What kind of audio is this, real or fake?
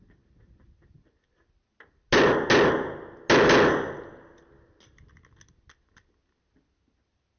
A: real